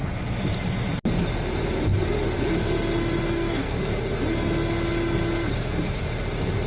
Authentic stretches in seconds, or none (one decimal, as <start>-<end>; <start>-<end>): 0.0-3.2; 3.9-6.7